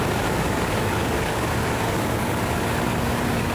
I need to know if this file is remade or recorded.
remade